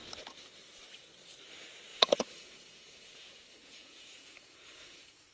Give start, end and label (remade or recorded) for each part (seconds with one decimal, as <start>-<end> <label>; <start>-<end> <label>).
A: 0.0-1.9 recorded; 1.9-5.3 remade